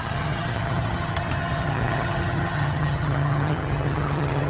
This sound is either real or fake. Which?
fake